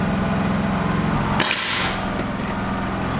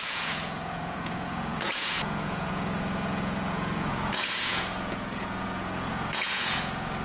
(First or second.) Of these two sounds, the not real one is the second